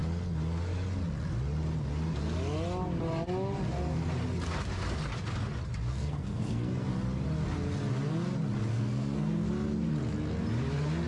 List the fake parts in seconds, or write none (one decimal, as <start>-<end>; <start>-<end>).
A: 5.9-6.9; 8.7-9.5